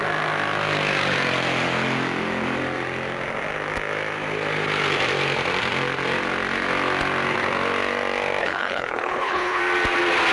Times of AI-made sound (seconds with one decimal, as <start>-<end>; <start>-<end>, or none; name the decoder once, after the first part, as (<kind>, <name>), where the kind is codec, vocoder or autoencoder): 8.4-9.6 (codec, HILCodec)